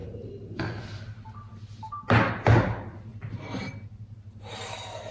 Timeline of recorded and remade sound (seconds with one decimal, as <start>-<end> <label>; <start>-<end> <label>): 0.0-3.1 recorded; 3.1-3.7 remade; 3.7-5.1 recorded